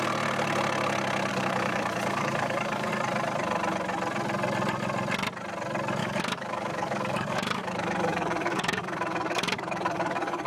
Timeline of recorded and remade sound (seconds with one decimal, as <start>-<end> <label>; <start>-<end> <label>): 0.0-1.3 recorded; 1.3-2.9 remade; 2.9-6.0 recorded; 6.0-10.5 remade